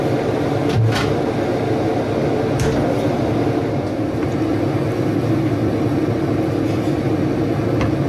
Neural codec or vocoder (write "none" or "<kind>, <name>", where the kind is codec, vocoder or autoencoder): none